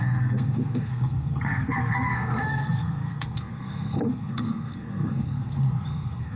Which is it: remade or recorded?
remade